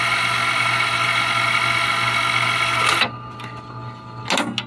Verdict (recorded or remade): recorded